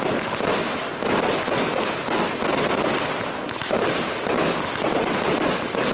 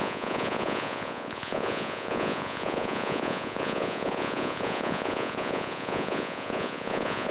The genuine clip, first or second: first